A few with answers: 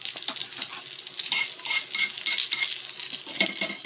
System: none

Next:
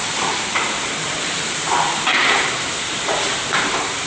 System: vocoder, BigVGAN v2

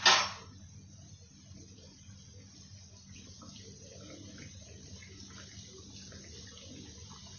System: none